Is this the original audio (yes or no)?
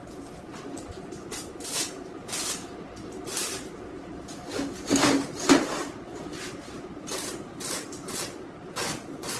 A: yes